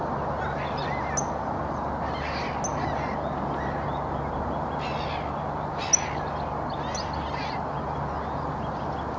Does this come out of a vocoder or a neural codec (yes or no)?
no